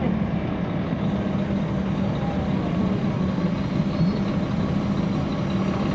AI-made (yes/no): no